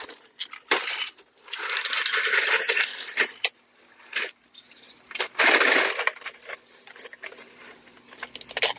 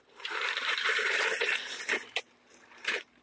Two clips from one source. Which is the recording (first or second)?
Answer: first